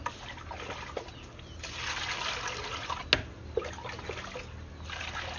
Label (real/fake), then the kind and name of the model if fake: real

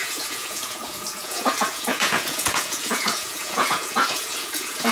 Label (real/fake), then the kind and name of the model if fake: fake, vocoder, Vocos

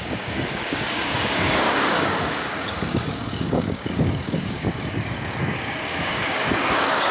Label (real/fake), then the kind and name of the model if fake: fake, codec, DAC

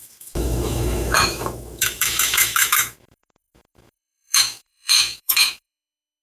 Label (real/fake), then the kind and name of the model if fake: fake, autoencoder, DAC-VAE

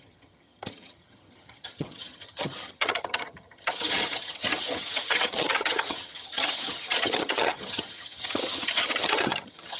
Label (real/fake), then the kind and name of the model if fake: fake, vocoder, HiFi-GAN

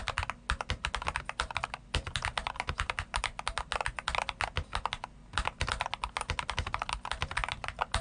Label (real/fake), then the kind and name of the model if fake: real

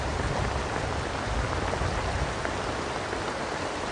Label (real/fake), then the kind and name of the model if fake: fake, vocoder, BigVGAN v2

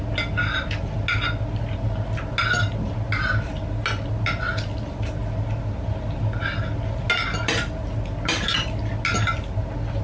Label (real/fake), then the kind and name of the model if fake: real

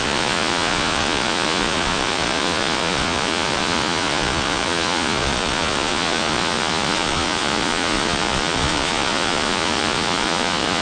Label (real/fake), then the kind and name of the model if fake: fake, vocoder, Vocos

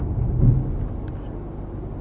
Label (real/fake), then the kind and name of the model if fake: real